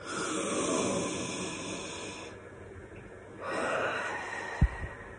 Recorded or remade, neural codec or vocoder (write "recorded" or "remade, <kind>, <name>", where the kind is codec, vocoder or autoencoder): recorded